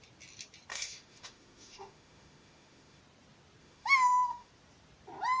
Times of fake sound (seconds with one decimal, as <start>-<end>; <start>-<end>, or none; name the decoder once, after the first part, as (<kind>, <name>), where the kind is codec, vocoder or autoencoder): 0.7-3.0 (autoencoder, DAC-VAE); 3.6-4.5